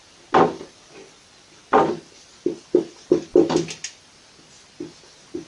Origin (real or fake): real